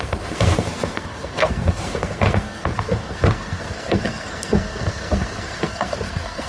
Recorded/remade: remade